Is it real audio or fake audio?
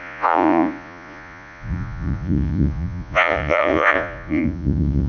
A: fake